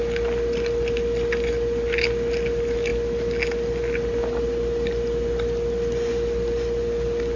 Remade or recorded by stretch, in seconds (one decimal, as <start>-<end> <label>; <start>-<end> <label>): 0.0-7.4 recorded